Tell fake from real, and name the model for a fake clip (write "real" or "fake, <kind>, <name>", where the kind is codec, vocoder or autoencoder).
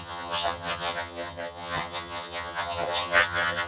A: fake, vocoder, HiFi-GAN